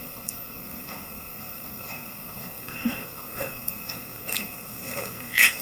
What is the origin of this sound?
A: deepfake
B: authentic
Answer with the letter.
A